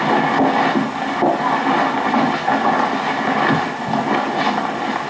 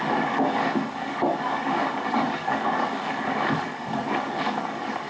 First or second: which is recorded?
first